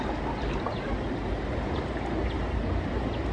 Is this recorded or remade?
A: recorded